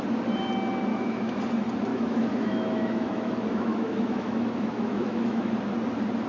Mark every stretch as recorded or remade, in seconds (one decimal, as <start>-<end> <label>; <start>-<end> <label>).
0.0-0.9 recorded; 0.9-1.4 remade; 1.4-1.9 recorded; 1.9-5.5 remade; 5.5-6.3 recorded